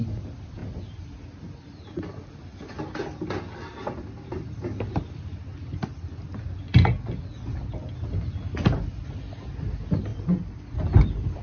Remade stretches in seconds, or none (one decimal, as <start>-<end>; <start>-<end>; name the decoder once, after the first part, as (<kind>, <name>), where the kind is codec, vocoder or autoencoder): none